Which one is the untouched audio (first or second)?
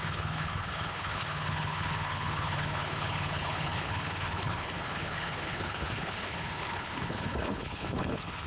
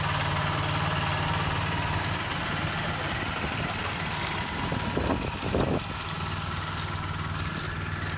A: second